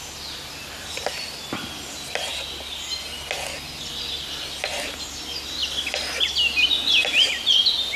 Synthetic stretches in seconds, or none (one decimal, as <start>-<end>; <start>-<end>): none